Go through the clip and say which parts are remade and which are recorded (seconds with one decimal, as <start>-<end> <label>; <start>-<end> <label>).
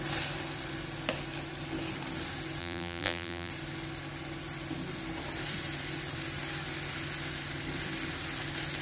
0.0-2.6 recorded; 2.6-3.5 remade; 3.5-8.8 recorded